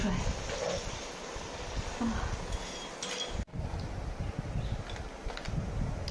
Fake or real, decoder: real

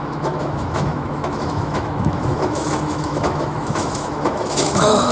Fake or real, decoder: fake, autoencoder, DAC-VAE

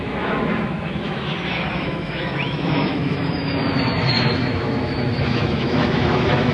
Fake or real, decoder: fake, autoencoder, DAC-VAE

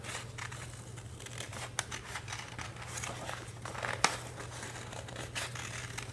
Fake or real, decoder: real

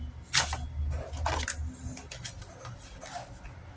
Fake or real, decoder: real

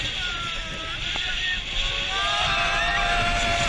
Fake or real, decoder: real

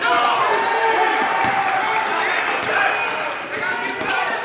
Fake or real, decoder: real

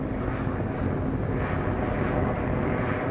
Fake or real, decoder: real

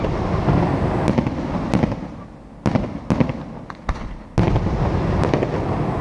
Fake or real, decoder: real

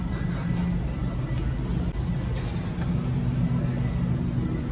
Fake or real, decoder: real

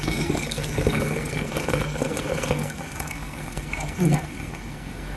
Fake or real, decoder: fake, codec, SNAC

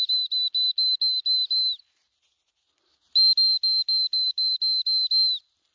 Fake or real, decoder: real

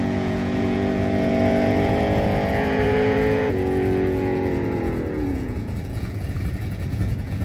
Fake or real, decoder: fake, vocoder, Vocos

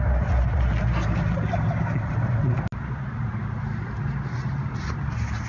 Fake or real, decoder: real